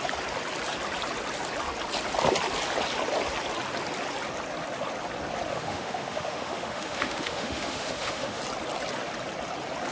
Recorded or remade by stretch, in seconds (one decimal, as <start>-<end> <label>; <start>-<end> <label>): 0.0-5.5 recorded; 5.5-8.4 remade; 8.4-9.9 recorded